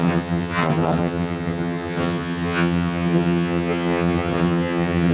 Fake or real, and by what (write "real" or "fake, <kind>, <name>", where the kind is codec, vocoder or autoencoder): fake, vocoder, HiFi-GAN